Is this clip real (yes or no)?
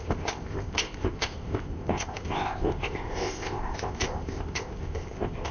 no